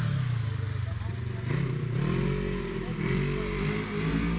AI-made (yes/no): no